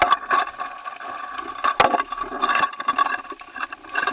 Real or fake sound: real